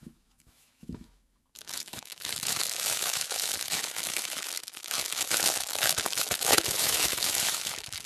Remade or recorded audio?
remade